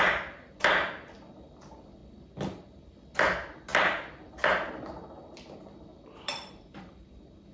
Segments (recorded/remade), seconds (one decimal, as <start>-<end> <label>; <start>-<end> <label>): 0.0-5.9 recorded; 5.9-6.8 remade; 6.8-7.5 recorded